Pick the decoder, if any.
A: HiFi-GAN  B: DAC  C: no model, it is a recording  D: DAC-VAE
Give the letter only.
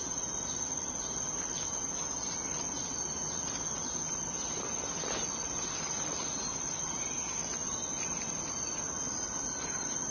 C